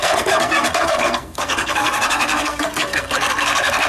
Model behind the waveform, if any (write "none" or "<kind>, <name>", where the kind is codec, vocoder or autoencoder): codec, SNAC